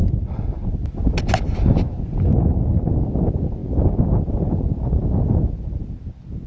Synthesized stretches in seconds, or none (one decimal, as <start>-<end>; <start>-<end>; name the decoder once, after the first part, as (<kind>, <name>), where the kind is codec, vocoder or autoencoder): none